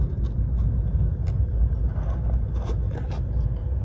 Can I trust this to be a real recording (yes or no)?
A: yes